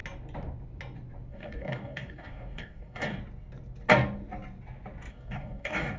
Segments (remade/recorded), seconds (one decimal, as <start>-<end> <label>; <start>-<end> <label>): 0.0-1.3 recorded; 1.3-3.2 remade; 3.2-5.1 recorded; 5.1-6.0 remade

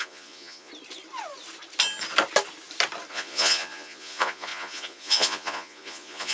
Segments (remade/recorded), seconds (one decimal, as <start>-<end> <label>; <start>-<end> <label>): 0.0-0.7 remade; 0.7-3.1 recorded; 3.1-6.3 remade

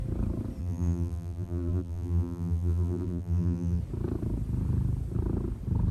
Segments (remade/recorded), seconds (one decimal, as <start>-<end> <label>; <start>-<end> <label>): 0.0-0.6 recorded; 0.6-3.8 remade; 3.8-5.9 recorded

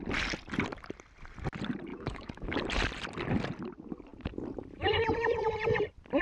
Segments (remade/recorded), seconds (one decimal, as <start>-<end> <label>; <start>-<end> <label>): 0.0-1.9 recorded; 1.9-2.6 remade; 2.6-6.2 recorded